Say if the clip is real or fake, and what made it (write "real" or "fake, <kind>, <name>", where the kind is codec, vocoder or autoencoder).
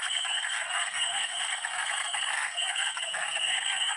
fake, codec, SNAC